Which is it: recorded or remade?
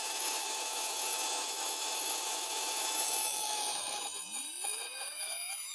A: remade